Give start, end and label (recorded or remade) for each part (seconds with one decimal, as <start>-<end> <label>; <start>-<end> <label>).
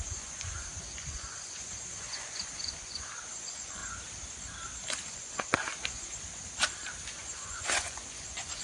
0.0-3.8 remade; 3.8-5.0 recorded; 5.0-6.1 remade; 6.1-7.1 recorded; 7.1-8.6 remade